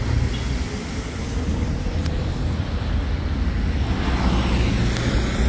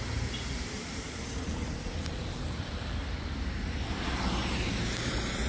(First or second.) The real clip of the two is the first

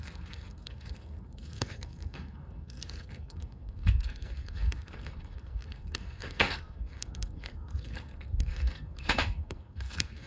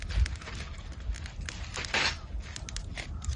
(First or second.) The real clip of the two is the second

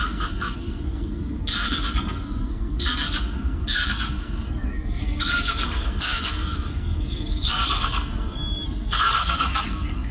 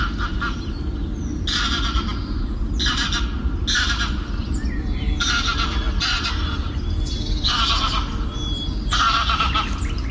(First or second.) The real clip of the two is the second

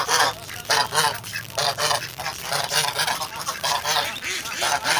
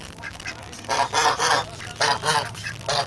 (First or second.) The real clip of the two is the second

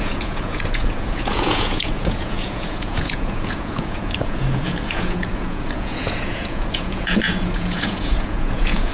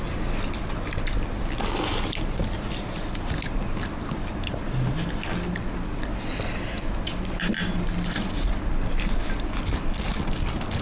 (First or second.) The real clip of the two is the second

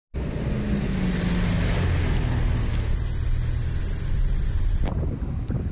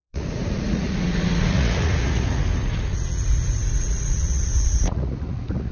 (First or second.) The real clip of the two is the first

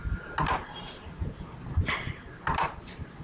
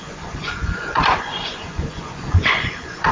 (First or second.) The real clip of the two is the first